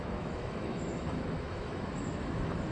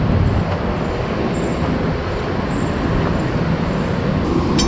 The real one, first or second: second